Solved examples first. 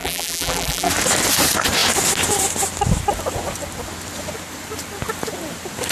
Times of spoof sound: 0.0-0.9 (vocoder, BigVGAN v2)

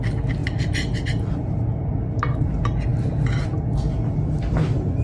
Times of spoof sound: 0.4-1.5 (vocoder, BigVGAN v2)

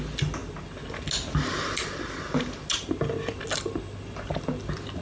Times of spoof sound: none

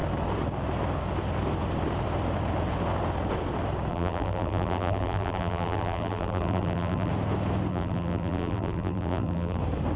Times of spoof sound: 3.9-7.1 (vocoder, BigVGAN v2); 7.7-9.6

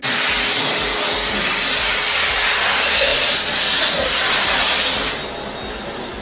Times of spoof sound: 3.1-4.3 (vocoder, BigVGAN v2)

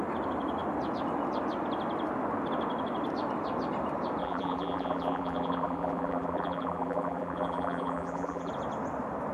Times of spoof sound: 4.2-8.5 (vocoder, BigVGAN v2)

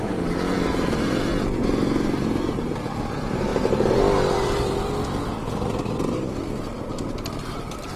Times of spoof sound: 3.5-4.0 (vocoder, BigVGAN v2)

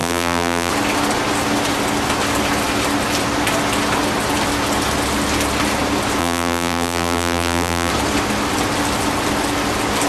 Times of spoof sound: 0.0-0.7 (vocoder, BigVGAN v2); 6.2-7.9